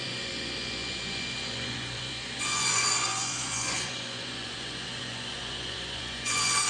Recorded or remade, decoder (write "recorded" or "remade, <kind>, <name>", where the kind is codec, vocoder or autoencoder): remade, vocoder, Vocos